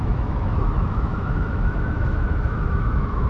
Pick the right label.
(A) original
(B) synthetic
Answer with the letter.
B